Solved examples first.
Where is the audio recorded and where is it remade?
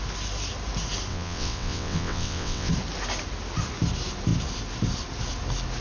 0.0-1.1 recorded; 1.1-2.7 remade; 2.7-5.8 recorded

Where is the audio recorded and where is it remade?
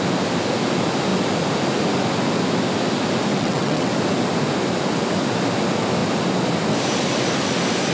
0.0-3.3 recorded; 3.3-3.9 remade; 3.9-7.9 recorded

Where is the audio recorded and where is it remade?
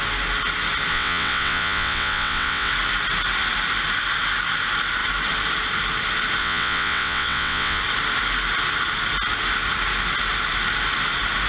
0.0-0.9 recorded; 0.9-2.7 remade; 2.7-6.4 recorded; 6.4-7.8 remade; 7.8-11.5 recorded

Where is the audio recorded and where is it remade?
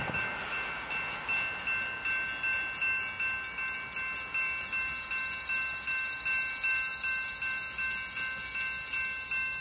0.0-9.6 recorded